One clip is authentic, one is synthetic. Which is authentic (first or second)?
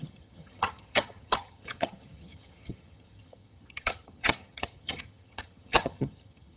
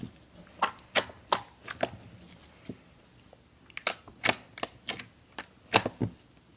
second